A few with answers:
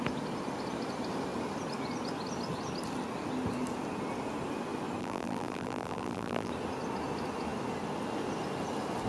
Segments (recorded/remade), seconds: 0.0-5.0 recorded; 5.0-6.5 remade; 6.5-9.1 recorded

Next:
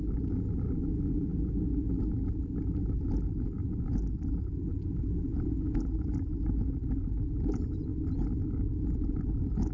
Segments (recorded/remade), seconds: 0.0-9.7 recorded

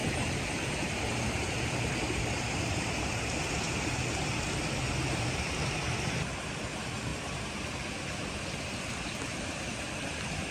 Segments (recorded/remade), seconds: 0.0-10.5 recorded

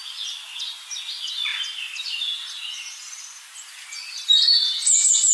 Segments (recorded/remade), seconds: 0.0-5.3 recorded

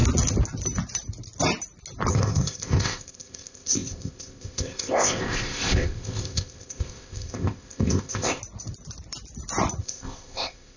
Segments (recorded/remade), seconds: 0.0-2.1 recorded; 2.1-8.4 remade; 8.4-9.8 recorded; 9.8-10.8 remade

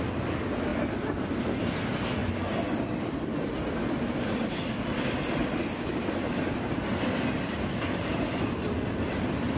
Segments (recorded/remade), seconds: 0.0-5.4 recorded; 5.4-9.6 remade

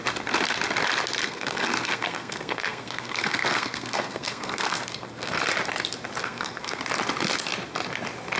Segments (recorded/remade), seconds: 0.0-1.2 recorded; 1.2-5.4 remade; 5.4-6.2 recorded; 6.2-6.8 remade; 6.8-8.4 recorded